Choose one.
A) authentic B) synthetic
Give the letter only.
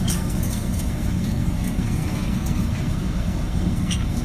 B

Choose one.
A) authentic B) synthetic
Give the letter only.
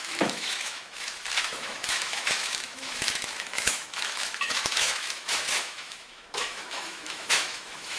B